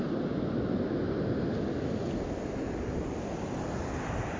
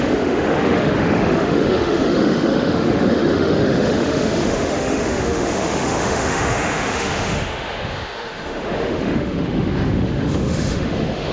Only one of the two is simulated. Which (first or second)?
second